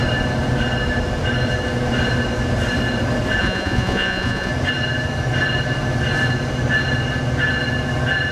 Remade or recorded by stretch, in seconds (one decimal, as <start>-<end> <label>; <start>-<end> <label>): 0.0-3.4 recorded; 3.4-4.5 remade; 4.5-8.3 recorded